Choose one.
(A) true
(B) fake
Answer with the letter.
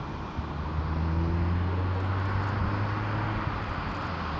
A